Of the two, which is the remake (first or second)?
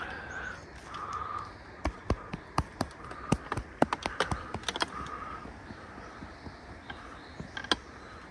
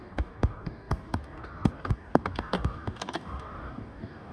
second